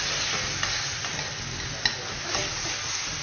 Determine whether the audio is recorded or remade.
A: recorded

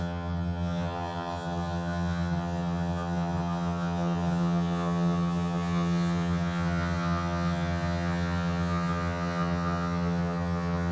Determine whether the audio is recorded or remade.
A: remade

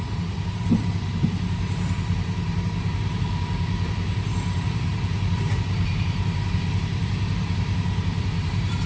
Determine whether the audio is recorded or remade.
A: remade